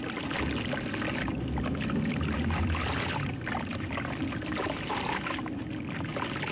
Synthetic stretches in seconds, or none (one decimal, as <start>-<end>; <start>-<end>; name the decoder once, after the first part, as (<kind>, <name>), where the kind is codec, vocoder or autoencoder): 1.7-5.1 (vocoder, BigVGAN v2)